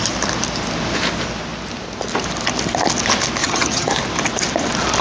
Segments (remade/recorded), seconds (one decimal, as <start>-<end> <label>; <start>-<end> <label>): 0.0-3.4 recorded; 3.4-3.9 remade; 3.9-5.0 recorded